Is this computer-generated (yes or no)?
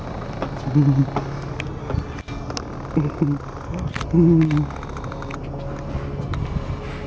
no